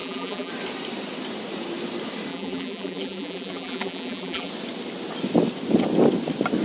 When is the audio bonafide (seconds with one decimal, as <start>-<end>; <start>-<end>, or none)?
0.5-2.3; 4.5-6.6